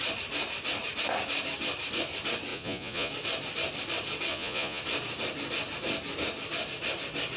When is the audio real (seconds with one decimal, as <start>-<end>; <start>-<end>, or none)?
0.0-2.5; 3.1-4.3; 4.8-7.4